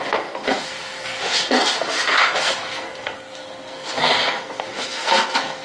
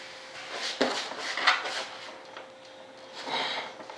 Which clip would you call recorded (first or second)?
second